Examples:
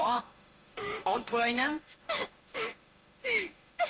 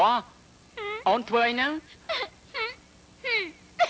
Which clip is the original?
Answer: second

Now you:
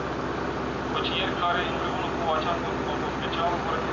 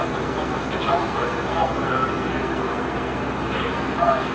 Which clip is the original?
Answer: first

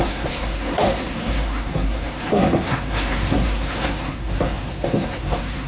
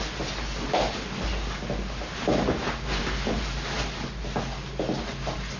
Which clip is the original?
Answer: second